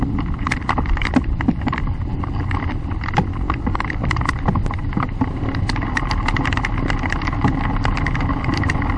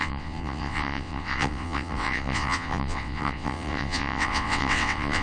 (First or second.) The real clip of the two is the first